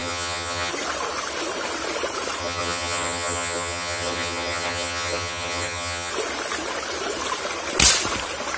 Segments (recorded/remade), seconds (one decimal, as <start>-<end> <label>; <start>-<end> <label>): 0.0-0.7 remade; 0.7-2.4 recorded; 2.4-6.1 remade; 6.1-8.6 recorded